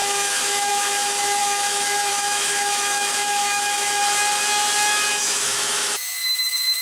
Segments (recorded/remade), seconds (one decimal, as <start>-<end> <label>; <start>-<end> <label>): 0.0-4.0 remade; 4.0-5.1 recorded; 5.1-6.8 remade